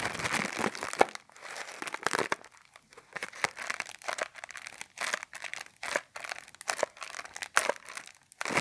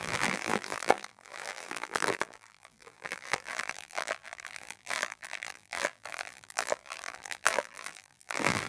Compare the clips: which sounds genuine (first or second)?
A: first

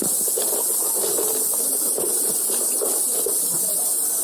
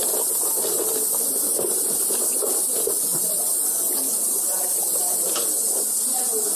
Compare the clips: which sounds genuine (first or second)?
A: second